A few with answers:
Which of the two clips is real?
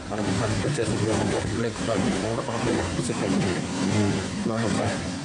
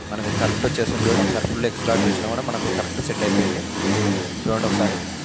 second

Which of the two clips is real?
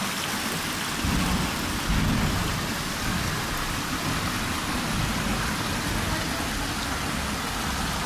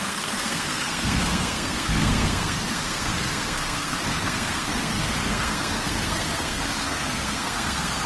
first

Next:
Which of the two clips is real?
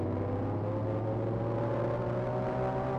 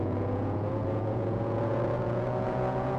first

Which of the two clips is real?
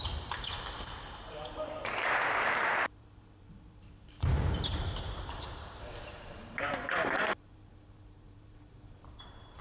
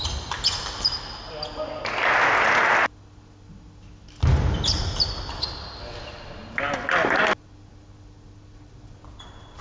second